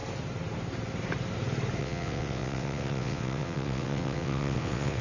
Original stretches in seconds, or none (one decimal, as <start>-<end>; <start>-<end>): 0.0-1.8